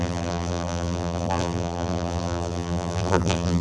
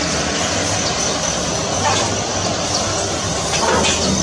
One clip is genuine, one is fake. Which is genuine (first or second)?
second